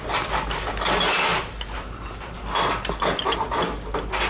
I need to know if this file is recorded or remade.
recorded